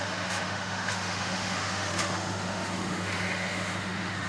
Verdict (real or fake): fake